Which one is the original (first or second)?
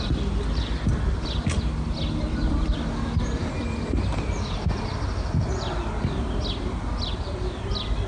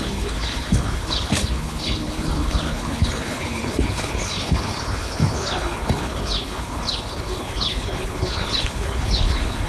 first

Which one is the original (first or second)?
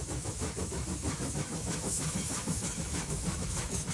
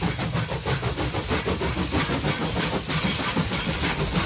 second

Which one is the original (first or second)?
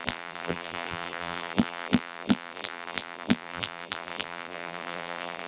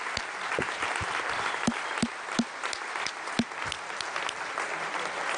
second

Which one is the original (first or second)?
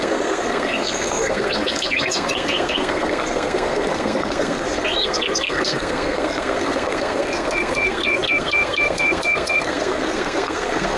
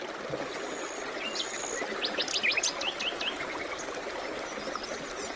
second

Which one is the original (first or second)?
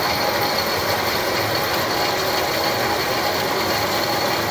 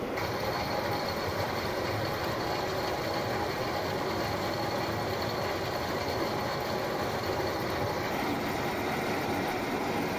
first